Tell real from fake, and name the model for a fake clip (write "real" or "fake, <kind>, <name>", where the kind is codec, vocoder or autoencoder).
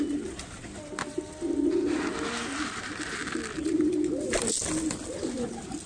real